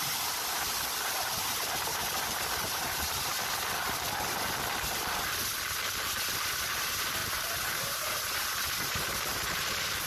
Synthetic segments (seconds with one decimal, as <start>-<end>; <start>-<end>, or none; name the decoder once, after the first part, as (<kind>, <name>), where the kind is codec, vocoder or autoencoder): 0.0-3.3 (vocoder, BigVGAN v2); 6.7-10.1